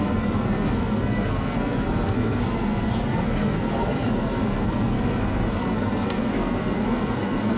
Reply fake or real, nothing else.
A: fake